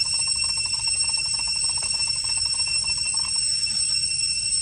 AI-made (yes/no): no